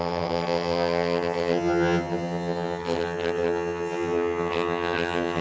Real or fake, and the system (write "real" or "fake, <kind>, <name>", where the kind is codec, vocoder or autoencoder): fake, vocoder, HiFi-GAN